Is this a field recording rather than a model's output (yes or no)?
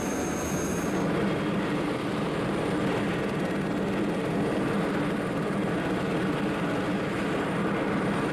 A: yes